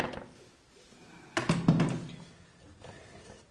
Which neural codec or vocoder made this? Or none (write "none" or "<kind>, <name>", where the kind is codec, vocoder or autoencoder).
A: none